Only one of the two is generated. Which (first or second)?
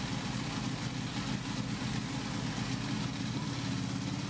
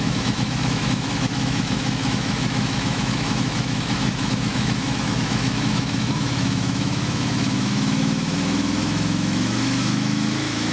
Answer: second